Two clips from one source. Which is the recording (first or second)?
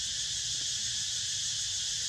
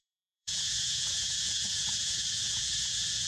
first